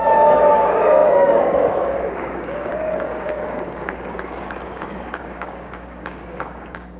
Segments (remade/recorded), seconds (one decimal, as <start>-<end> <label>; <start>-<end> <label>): 0.0-7.0 remade